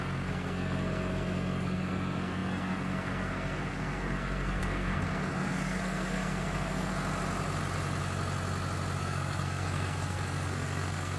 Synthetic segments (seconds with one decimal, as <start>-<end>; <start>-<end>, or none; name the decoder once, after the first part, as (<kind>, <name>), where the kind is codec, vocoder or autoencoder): 0.0-6.9 (codec, SNAC); 9.0-11.2